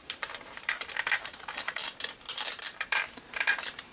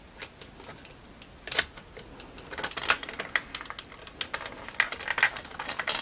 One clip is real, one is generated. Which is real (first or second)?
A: second